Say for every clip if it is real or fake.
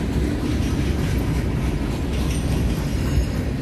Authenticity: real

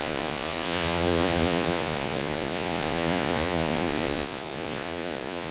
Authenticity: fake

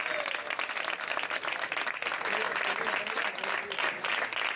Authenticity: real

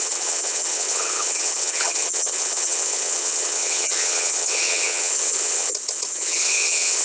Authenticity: fake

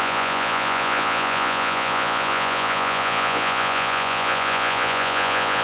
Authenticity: fake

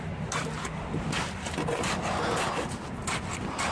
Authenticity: real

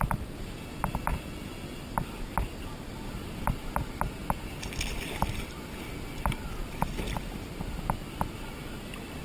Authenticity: real